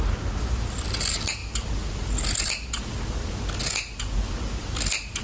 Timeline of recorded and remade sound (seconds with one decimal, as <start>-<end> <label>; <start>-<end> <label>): 0.0-5.2 recorded